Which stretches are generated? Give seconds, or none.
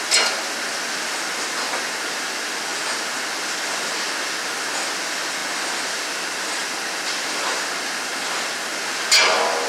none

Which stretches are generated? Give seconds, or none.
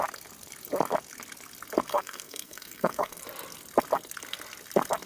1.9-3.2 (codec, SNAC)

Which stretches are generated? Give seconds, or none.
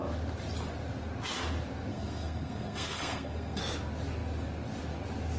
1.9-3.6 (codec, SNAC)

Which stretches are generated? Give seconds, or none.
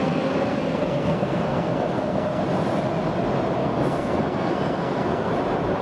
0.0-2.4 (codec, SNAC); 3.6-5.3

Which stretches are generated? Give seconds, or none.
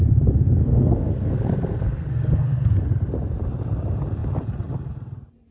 0.6-2.7 (codec, SNAC)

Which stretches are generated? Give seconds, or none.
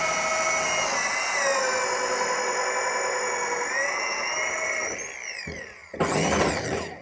none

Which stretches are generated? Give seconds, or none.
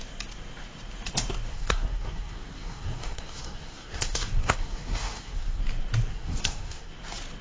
1.5-5.6 (codec, SNAC); 6.1-6.9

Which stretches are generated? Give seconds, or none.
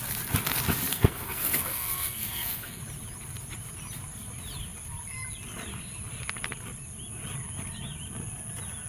0.9-2.8 (codec, SNAC)